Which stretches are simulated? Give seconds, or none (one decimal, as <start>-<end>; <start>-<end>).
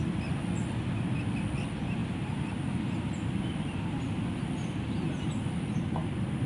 none